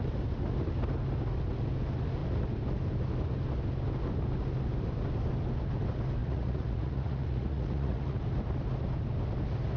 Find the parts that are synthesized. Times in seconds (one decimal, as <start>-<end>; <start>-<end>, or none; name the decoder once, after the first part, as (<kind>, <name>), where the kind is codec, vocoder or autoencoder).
6.2-8.2 (vocoder, Vocos)